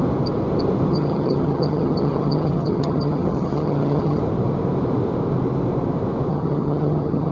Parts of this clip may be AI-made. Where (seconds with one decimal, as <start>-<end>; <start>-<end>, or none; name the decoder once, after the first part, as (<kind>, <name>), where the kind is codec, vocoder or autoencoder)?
0.9-4.2 (vocoder, HiFi-GAN); 6.3-7.3